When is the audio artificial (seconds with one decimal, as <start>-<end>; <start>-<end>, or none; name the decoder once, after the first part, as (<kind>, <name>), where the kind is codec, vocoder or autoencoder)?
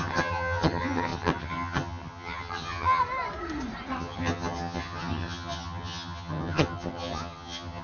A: 0.0-3.0 (vocoder, HiFi-GAN); 4.0-7.8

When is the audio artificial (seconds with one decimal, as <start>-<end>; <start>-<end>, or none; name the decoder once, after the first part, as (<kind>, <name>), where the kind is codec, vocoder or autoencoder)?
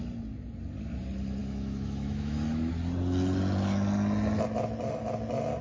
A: 1.4-2.7 (autoencoder, DAC-VAE)